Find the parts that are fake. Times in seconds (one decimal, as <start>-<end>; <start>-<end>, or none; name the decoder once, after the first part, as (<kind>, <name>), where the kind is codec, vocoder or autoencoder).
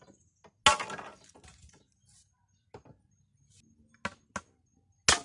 none